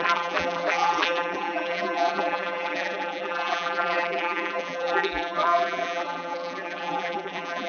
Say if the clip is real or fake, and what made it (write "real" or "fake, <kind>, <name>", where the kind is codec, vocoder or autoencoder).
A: fake, vocoder, BigVGAN v2